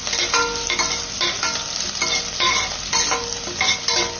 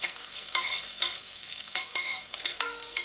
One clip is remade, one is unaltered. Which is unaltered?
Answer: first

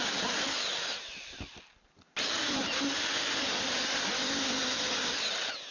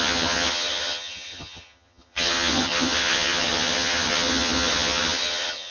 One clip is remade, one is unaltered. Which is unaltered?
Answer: first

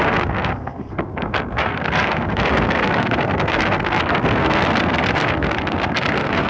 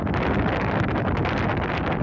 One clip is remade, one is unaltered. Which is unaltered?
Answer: second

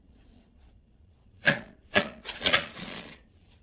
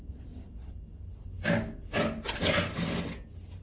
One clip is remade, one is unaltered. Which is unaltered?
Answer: second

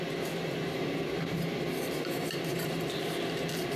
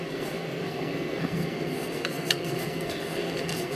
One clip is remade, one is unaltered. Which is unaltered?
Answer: first